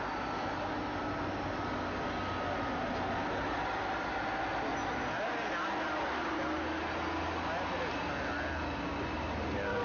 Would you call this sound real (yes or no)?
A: yes